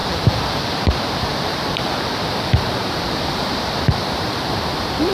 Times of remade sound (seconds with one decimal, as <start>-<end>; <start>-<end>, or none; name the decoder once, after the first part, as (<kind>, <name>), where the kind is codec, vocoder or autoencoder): 0.0-5.1 (vocoder, BigVGAN v2)